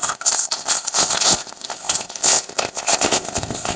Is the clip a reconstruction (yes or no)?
yes